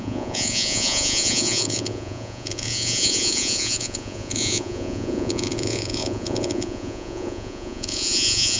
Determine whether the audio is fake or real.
fake